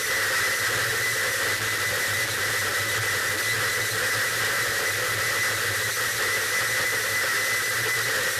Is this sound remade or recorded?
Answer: recorded